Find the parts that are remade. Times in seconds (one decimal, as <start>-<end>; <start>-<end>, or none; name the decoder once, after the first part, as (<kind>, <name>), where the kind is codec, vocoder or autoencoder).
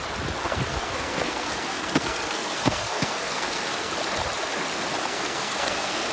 0.4-3.9 (codec, SNAC); 5.0-6.1